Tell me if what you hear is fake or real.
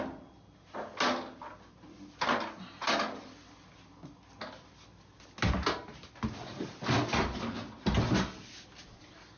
real